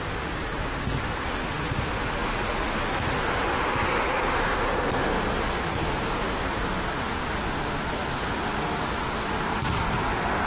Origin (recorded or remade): recorded